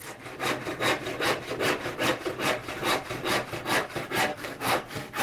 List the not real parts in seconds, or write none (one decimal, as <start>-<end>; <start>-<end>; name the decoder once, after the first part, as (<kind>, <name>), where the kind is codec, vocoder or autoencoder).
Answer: 4.3-5.2 (codec, SNAC)

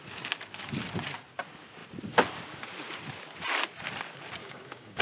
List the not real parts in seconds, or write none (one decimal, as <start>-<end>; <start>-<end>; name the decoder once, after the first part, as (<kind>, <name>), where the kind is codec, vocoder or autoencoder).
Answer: 4.4-5.0 (codec, DAC)

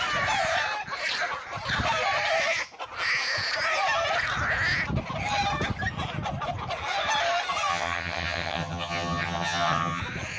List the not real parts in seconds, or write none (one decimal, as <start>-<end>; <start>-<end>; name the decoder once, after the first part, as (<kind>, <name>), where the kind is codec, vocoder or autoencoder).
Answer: 7.7-10.0 (vocoder, HiFi-GAN)

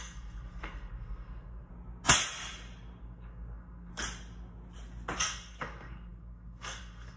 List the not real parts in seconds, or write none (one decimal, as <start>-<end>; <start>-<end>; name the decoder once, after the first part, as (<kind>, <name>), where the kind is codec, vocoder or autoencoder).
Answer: 0.0-1.7 (codec, SNAC); 3.0-3.9; 5.2-7.2

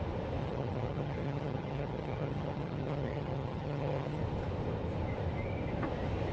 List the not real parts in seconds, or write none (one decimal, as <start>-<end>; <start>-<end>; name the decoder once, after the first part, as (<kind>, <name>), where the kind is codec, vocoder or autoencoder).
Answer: 0.4-4.2 (vocoder, HiFi-GAN)

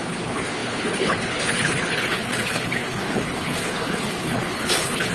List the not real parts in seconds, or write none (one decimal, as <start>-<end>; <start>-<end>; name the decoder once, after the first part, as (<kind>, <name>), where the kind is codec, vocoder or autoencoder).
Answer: 0.0-5.1 (codec, HILCodec)

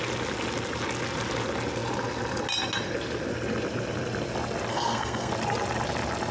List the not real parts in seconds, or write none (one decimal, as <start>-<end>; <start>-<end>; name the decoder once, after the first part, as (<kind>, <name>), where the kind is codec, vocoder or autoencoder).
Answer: 4.7-5.3 (codec, SNAC)